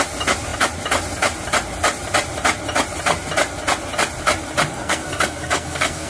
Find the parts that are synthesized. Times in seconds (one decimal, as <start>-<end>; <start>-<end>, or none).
4.7-6.1